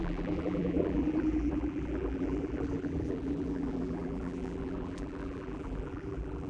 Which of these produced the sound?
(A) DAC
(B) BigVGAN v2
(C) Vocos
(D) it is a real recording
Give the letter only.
B